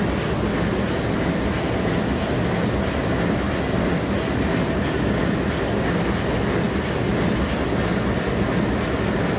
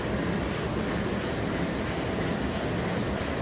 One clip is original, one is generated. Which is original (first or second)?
first